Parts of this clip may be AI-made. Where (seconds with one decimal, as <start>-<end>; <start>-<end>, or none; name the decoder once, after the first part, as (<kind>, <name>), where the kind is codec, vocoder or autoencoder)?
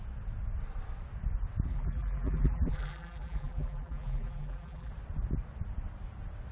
1.7-4.9 (vocoder, BigVGAN v2)